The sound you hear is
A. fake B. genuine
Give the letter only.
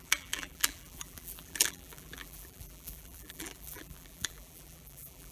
A